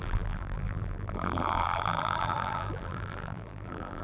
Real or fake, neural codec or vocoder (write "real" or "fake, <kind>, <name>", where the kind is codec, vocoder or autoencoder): fake, vocoder, BigVGAN v2